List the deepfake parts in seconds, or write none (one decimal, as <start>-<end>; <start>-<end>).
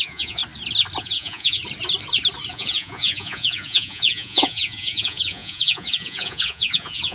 0.0-0.4; 1.0-1.6; 2.5-7.1